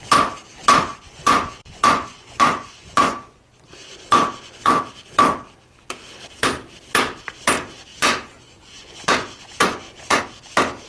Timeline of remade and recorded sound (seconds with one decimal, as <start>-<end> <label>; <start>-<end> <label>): 0.0-0.9 recorded; 0.9-4.8 remade; 4.8-7.9 recorded; 7.9-10.2 remade; 10.2-10.9 recorded